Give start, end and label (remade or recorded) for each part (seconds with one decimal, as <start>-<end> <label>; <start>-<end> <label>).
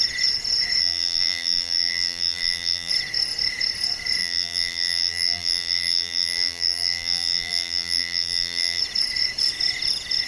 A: 0.0-0.8 recorded; 0.8-2.9 remade; 2.9-4.2 recorded; 4.2-8.8 remade; 8.8-10.3 recorded